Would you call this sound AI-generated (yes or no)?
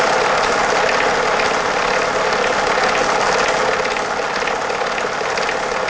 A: no